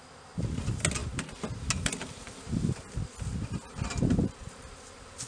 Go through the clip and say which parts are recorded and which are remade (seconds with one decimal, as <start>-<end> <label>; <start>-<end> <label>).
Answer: 0.0-5.3 recorded